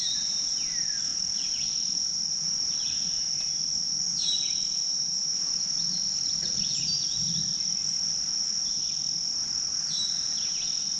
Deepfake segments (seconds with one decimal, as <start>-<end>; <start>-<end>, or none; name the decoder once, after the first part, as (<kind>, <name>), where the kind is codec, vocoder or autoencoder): none